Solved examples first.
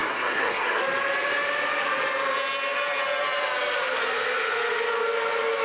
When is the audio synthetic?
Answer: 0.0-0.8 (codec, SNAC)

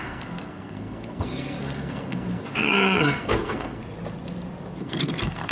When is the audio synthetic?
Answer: 0.0-3.8 (codec, SNAC); 4.8-5.5

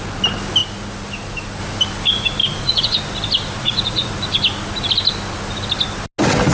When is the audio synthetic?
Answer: 2.4-3.0 (vocoder, Vocos); 3.6-4.1